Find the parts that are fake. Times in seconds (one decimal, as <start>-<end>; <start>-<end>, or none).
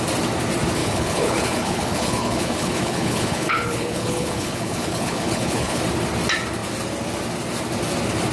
0.8-5.8